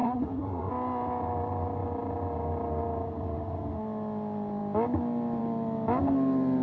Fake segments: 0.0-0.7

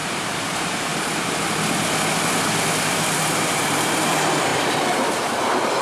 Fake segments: 0.0-0.9; 2.8-5.8

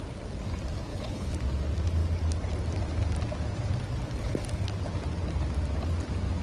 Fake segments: 0.9-1.4

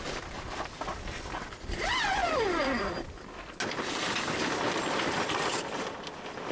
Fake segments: none

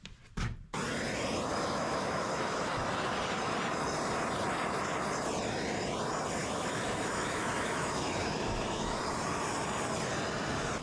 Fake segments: 1.5-2.7; 6.4-9.0

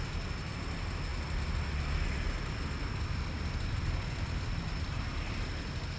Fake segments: none

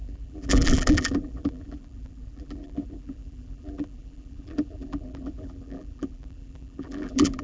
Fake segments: 0.0-7.4

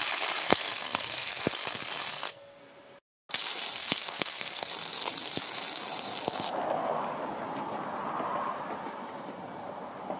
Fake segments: 0.4-1.4; 2.1-2.6; 3.8-4.7